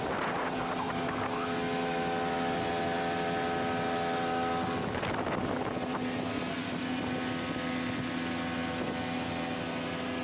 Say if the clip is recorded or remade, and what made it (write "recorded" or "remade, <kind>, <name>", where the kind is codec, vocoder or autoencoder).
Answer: recorded